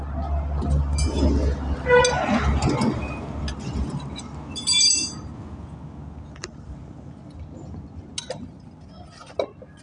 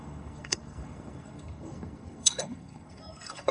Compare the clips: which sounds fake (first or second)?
second